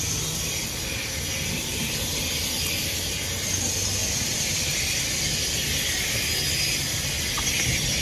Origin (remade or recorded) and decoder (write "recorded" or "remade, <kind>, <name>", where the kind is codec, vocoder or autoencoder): recorded